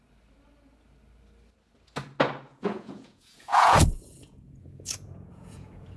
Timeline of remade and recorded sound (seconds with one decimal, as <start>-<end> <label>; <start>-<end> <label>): 0.0-2.5 recorded; 2.5-6.0 remade